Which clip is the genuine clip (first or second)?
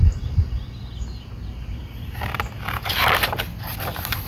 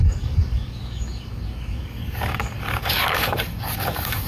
first